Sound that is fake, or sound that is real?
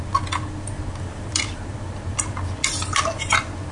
real